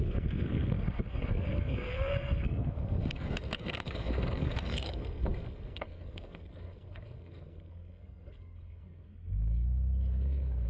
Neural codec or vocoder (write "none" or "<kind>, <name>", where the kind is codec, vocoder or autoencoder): codec, SNAC